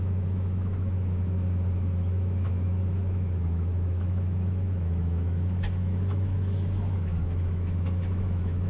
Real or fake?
fake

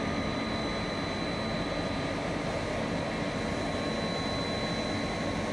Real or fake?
real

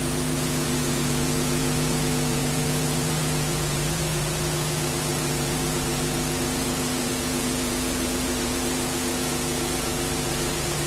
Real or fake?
fake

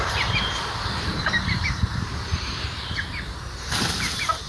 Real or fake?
fake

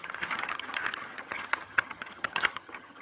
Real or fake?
fake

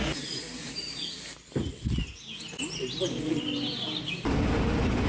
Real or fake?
real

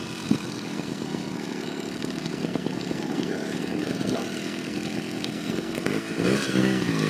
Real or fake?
fake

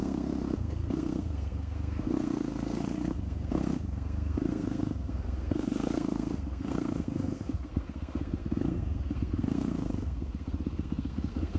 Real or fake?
fake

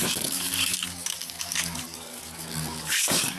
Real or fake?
fake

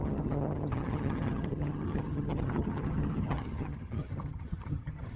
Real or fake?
fake